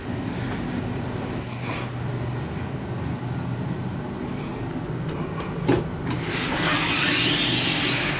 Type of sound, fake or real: real